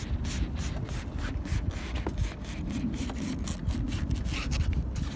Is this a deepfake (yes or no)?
no